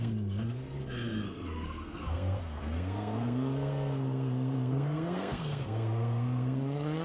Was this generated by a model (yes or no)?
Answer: yes